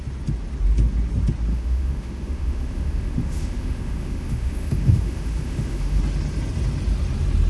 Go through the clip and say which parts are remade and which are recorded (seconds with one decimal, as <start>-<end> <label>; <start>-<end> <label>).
0.0-1.5 recorded; 1.5-6.0 remade; 6.0-7.5 recorded